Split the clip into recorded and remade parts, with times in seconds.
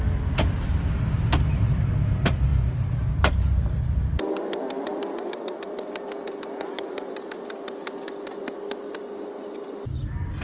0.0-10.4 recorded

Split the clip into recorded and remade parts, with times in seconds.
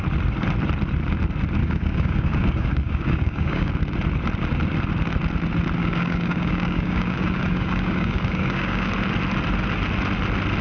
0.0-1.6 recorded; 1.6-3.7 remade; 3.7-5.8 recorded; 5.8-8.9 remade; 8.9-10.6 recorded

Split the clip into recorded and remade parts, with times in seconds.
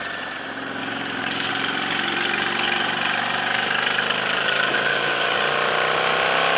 0.0-0.8 recorded; 0.8-1.5 remade; 1.5-4.9 recorded; 4.9-5.4 remade; 5.4-6.6 recorded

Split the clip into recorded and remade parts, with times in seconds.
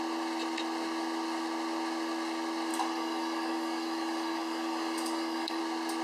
0.0-2.7 recorded; 2.7-5.6 remade; 5.6-6.0 recorded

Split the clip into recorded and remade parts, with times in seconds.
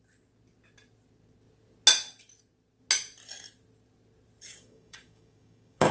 0.0-4.5 recorded; 4.5-5.9 remade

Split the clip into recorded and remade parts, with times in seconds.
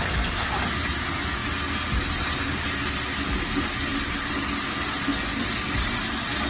0.0-6.5 recorded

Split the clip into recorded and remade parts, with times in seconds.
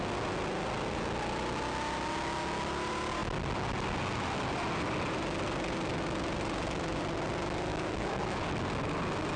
0.0-7.7 recorded; 7.7-8.5 remade; 8.5-9.4 recorded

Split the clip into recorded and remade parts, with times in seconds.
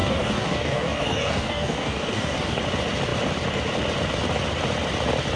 0.0-2.6 remade; 2.6-5.4 recorded